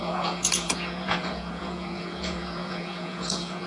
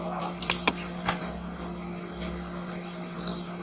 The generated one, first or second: first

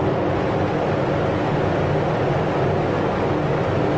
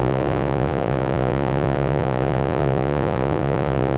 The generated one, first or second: second